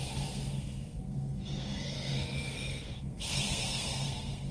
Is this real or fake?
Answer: fake